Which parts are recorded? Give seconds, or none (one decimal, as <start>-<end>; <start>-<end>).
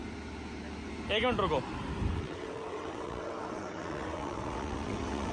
0.0-2.1